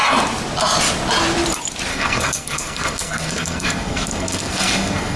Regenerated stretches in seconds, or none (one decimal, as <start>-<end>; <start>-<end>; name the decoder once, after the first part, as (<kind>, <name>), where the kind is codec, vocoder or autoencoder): 1.9-5.2 (codec, SNAC)